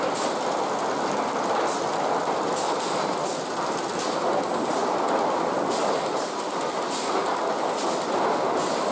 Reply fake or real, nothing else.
real